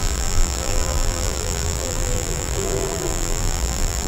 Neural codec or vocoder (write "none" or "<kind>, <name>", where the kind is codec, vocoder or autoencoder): vocoder, BigVGAN v2